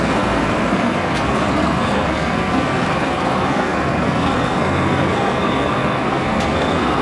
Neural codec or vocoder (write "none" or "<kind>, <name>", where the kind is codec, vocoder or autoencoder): codec, SNAC